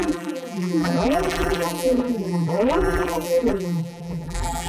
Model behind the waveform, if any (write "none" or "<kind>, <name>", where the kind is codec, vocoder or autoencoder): vocoder, BigVGAN v2